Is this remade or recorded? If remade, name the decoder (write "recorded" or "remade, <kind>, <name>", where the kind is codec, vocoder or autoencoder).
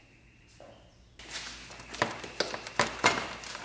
recorded